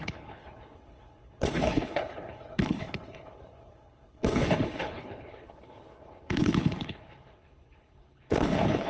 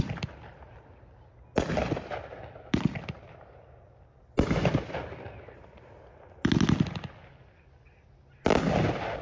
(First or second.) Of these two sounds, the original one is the second